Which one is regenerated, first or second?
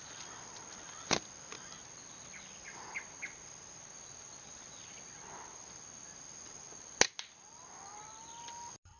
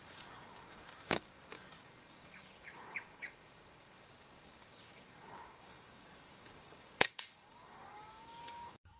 second